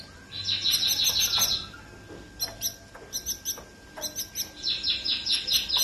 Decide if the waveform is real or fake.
real